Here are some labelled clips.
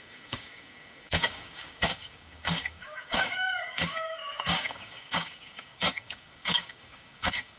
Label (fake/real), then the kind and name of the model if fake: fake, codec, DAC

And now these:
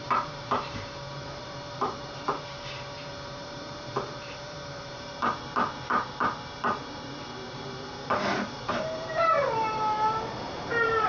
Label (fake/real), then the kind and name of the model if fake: fake, vocoder, BigVGAN v2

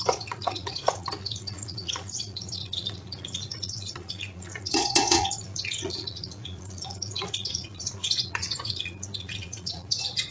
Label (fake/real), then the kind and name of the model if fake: fake, vocoder, Vocos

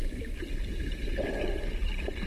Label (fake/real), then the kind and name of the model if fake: real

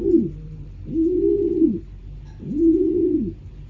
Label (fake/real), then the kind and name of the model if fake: real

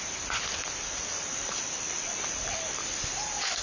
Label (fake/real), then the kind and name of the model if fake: fake, vocoder, BigVGAN v2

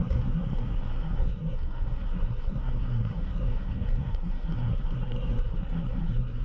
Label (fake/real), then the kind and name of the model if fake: fake, codec, SNAC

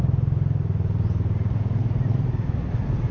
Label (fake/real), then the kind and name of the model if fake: fake, vocoder, BigVGAN v2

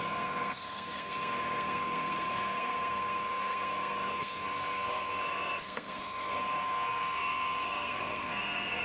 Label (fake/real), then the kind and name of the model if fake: fake, codec, SNAC